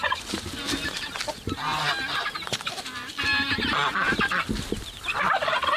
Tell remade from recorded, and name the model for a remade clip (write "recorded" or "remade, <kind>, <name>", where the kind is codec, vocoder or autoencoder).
recorded